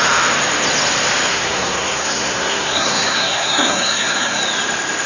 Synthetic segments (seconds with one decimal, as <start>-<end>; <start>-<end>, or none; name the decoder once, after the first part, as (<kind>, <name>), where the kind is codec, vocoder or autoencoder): 1.3-4.4 (codec, SNAC)